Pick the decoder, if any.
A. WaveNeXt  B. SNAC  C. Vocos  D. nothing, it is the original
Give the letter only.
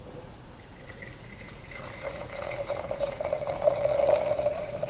C